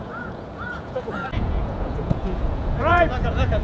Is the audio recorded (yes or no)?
no